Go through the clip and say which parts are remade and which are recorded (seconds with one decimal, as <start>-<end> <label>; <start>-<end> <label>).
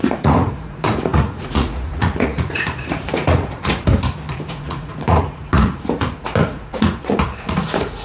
0.0-3.9 remade; 3.9-4.5 recorded; 4.5-8.0 remade